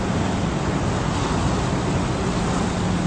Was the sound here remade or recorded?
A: recorded